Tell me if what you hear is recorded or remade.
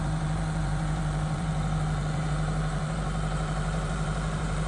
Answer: remade